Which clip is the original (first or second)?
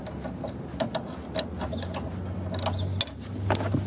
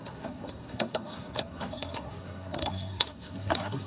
first